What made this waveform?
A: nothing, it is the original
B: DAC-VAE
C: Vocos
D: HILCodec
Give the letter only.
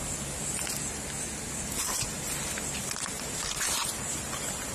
A